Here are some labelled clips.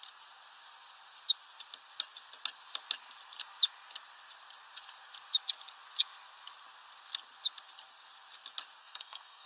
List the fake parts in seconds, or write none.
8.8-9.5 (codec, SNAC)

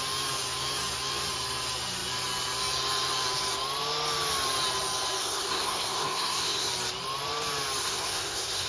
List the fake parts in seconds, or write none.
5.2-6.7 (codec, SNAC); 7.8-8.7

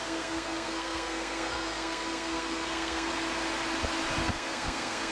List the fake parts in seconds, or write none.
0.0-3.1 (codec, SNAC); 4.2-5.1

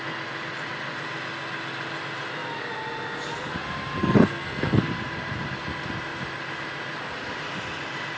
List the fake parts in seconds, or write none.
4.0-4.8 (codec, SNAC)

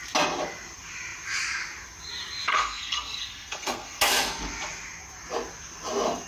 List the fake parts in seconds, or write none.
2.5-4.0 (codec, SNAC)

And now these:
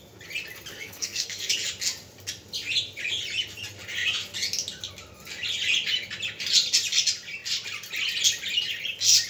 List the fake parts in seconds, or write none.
0.7-1.5 (codec, SNAC)

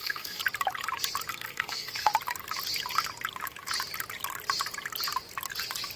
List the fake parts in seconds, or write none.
0.0-0.4 (codec, SNAC); 1.3-2.1